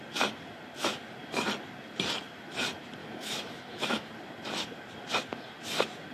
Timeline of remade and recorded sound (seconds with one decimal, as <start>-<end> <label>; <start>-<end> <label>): 0.0-3.0 recorded; 3.0-4.1 remade; 4.1-6.1 recorded